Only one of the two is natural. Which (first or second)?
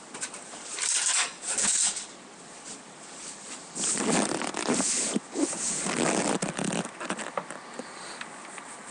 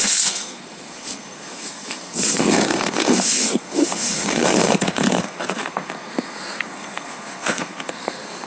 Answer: first